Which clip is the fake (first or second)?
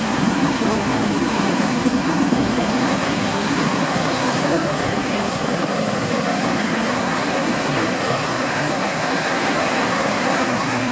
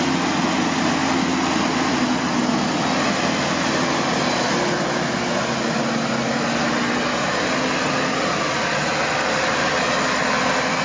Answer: first